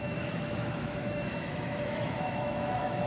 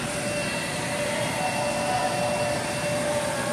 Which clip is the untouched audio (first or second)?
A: second